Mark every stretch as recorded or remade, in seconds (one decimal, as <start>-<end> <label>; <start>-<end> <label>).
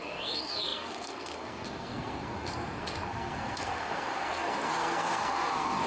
0.0-5.9 remade